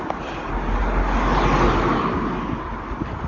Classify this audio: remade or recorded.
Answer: recorded